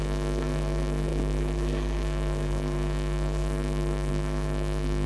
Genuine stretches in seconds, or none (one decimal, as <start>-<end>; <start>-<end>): none

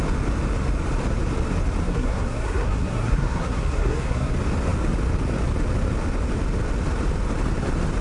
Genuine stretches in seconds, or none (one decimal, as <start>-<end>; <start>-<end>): 0.0-1.8; 4.3-8.0

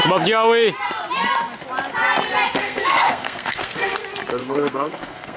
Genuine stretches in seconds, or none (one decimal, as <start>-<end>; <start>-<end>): 0.0-2.6; 4.0-4.4

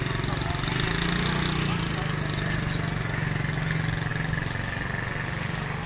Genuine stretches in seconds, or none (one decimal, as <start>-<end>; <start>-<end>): 0.0-5.9

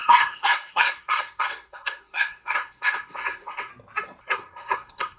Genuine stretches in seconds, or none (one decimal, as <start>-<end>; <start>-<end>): 3.7-4.2

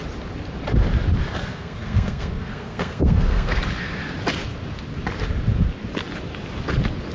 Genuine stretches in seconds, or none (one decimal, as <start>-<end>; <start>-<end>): 0.0-1.4; 3.6-7.1